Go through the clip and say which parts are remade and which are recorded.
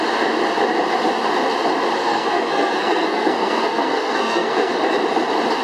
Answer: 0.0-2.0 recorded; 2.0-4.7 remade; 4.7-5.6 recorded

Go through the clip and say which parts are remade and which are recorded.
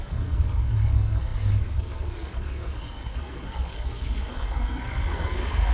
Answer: 0.0-5.7 remade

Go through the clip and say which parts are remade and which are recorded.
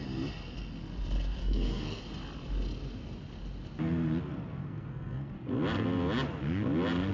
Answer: 0.0-1.4 recorded; 1.4-2.0 remade; 2.0-4.6 recorded; 4.6-5.3 remade; 5.3-7.1 recorded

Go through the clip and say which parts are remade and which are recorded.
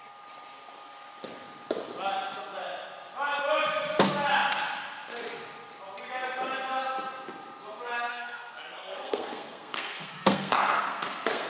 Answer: 0.0-8.1 recorded; 8.1-11.5 remade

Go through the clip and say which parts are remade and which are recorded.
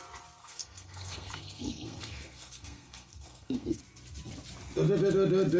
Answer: 0.0-0.4 recorded; 0.4-3.8 remade; 3.8-5.6 recorded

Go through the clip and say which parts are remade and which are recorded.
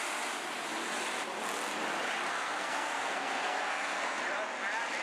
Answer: 0.0-2.3 recorded; 2.3-4.2 remade; 4.2-5.0 recorded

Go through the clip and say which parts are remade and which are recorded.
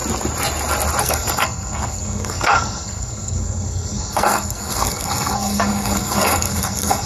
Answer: 0.0-1.0 recorded; 1.0-7.1 remade